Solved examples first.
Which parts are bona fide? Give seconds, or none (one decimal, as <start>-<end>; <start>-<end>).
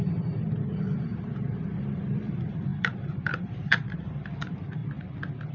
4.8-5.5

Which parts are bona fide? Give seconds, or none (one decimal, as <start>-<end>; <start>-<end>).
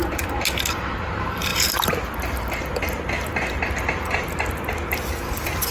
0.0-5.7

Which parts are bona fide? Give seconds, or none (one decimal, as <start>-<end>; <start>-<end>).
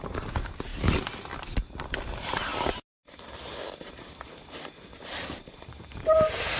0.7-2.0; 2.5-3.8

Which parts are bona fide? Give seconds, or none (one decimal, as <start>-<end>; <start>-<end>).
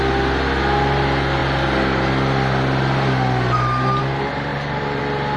0.0-4.5; 5.0-5.4